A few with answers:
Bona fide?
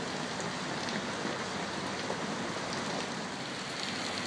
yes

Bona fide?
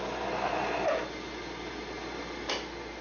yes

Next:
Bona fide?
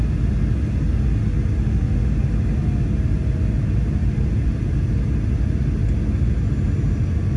yes